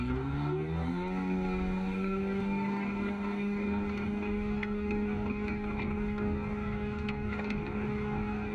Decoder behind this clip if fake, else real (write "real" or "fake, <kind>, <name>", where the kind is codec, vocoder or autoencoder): fake, codec, DAC